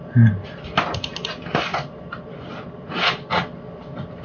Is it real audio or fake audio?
real